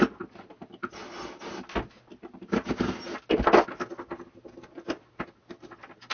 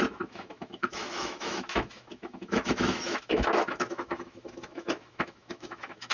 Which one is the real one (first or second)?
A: first